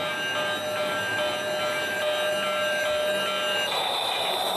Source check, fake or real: real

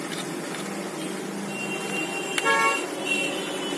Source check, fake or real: real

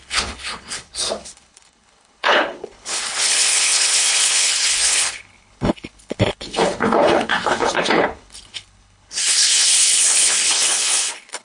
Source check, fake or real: fake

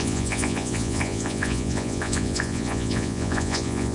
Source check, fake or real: fake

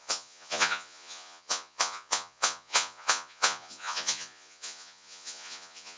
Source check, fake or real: fake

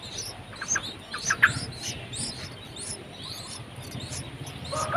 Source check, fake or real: real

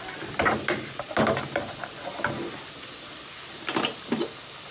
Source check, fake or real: real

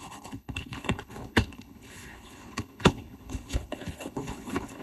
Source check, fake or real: fake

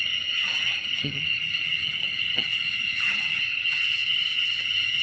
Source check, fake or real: fake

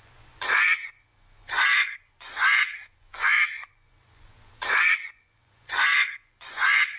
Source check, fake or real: fake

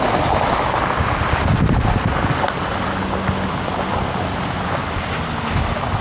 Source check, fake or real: real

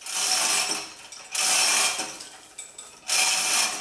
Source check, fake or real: real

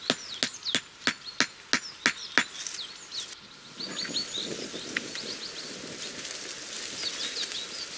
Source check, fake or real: real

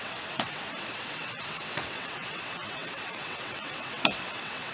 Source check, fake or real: fake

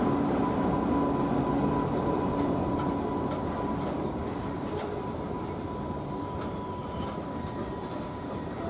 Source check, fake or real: real